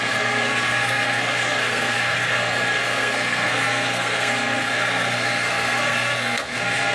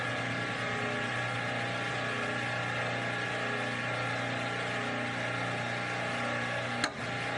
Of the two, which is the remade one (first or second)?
first